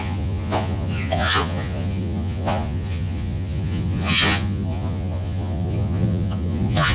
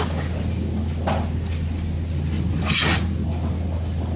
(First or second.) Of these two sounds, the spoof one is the first